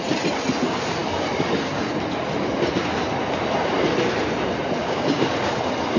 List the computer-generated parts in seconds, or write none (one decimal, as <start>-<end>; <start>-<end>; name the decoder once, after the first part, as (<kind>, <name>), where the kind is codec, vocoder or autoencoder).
4.8-5.3 (codec, DAC)